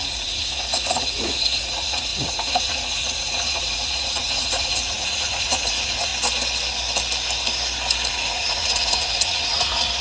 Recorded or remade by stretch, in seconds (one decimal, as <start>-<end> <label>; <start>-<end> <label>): 0.0-6.1 remade; 6.1-8.1 recorded; 8.1-10.0 remade